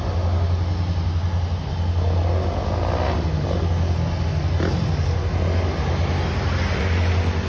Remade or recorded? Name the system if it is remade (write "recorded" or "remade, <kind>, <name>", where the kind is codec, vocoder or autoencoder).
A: recorded